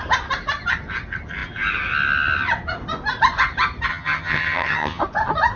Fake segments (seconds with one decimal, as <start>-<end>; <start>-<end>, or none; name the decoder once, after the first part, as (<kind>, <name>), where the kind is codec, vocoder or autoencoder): 3.9-5.0 (vocoder, HiFi-GAN)